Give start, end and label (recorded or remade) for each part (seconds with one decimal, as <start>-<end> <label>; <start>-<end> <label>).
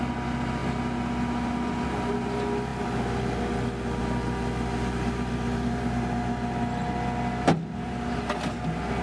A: 0.0-9.0 recorded